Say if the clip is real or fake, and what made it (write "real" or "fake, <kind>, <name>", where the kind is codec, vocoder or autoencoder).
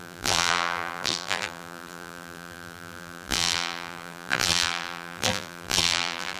fake, vocoder, BigVGAN v2